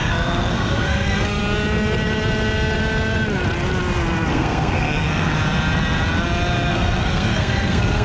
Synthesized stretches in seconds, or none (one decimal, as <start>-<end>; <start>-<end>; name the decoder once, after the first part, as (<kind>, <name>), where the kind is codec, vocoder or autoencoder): 0.0-1.4 (codec, SNAC); 4.3-5.3; 6.7-8.0